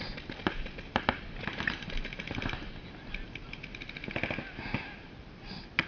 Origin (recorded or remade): recorded